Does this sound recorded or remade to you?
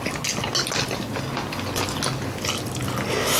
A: recorded